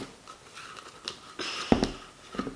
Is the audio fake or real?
real